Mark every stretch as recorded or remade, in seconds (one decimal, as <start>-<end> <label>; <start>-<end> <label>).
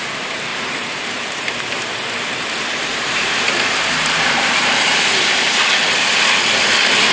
0.0-0.5 recorded; 0.5-1.6 remade; 1.6-2.9 recorded; 2.9-5.5 remade; 5.5-7.1 recorded